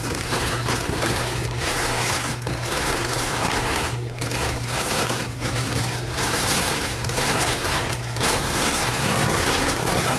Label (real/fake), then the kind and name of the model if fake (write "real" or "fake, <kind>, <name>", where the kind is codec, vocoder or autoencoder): fake, codec, SNAC